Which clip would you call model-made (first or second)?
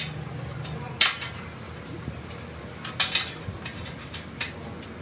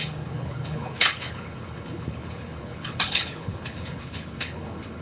second